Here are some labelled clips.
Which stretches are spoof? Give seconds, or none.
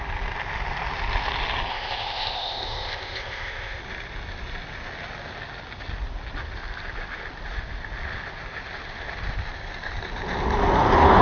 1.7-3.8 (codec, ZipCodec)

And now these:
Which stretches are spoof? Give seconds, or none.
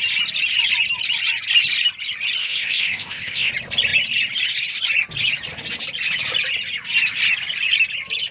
2.4-3.5 (codec, ZipCodec)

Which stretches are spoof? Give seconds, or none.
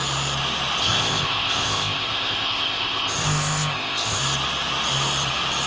0.8-4.2 (codec, ZipCodec)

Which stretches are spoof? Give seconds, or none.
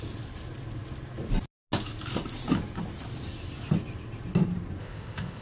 4.8-5.4 (codec, ZipCodec)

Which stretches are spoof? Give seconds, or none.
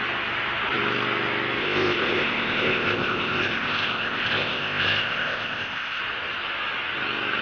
1.6-6.0 (codec, ZipCodec)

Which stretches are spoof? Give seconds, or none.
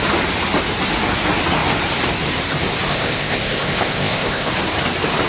2.9-4.5 (codec, ZipCodec)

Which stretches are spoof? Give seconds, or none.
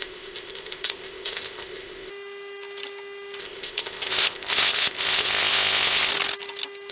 0.0-2.1 (codec, ZipCodec); 3.4-6.1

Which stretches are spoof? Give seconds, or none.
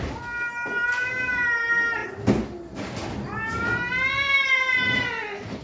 none